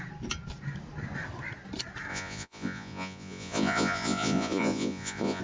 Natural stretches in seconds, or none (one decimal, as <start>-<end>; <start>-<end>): 0.0-2.1